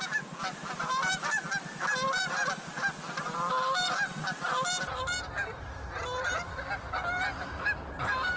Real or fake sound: real